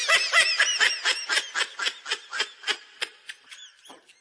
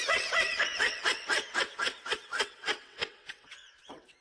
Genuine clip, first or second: first